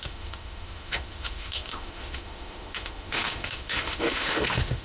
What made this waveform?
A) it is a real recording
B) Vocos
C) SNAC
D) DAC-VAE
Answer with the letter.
D